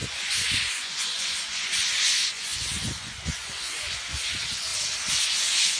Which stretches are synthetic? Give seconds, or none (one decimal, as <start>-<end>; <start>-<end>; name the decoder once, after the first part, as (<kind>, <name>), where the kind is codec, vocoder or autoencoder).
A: 0.0-4.7 (vocoder, Vocos); 5.2-5.8